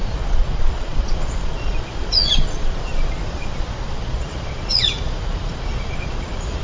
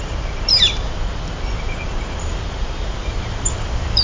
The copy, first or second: first